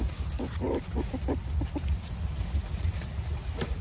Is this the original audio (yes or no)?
yes